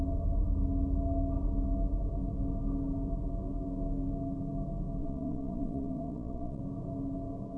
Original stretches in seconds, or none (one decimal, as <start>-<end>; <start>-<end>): 0.0-5.0; 6.6-7.6